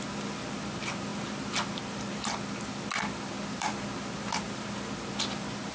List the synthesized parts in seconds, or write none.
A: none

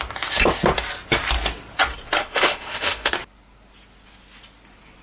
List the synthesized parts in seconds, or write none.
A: 2.2-3.1 (autoencoder, DAC-VAE)